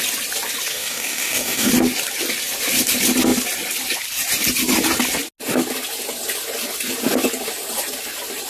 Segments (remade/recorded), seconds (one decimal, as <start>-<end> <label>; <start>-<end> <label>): 0.0-0.7 recorded; 0.7-1.7 remade; 1.7-8.5 recorded